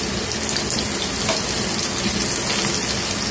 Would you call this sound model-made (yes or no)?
no